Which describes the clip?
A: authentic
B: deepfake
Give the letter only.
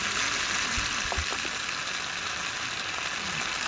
A